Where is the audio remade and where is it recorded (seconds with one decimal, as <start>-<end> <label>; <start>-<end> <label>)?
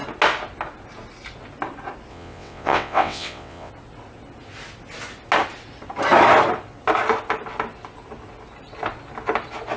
0.0-2.1 recorded; 2.1-3.7 remade; 3.7-9.8 recorded